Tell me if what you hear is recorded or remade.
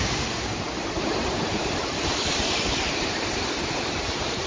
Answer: remade